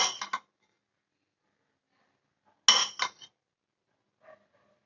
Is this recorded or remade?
recorded